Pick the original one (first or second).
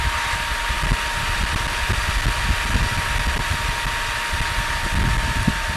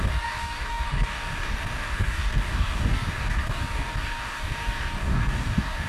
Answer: first